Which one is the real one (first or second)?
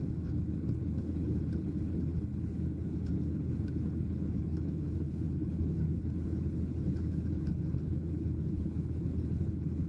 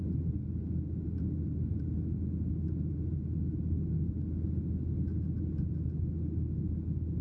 second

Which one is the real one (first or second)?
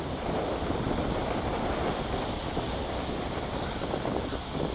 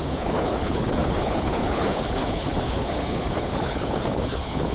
first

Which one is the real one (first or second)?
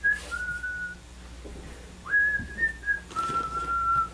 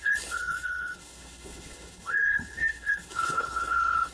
first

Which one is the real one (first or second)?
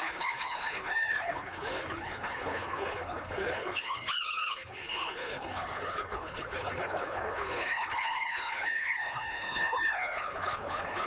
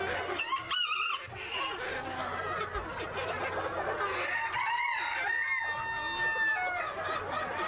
second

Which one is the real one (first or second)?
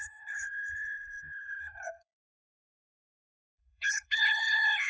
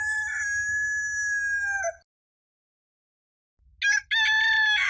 second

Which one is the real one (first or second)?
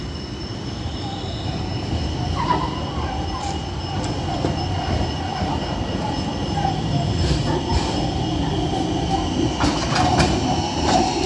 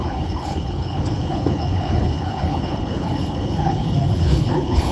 first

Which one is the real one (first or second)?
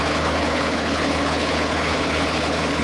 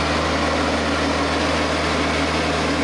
second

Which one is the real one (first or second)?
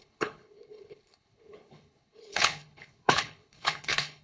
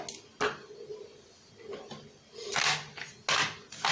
second